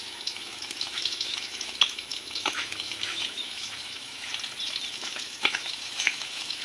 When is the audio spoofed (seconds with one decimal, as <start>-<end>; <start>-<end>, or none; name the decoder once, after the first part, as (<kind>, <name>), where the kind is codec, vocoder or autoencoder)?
0.0-4.3 (autoencoder, DAC-VAE); 4.9-6.6